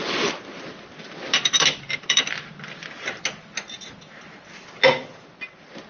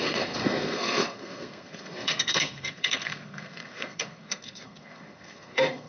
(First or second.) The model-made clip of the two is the second